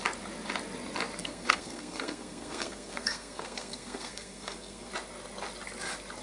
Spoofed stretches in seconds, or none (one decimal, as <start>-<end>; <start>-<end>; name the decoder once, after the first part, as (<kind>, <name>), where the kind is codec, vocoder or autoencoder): 1.2-4.9 (codec, SNAC)